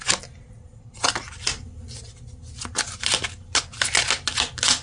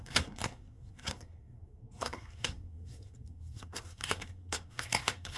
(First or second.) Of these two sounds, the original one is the first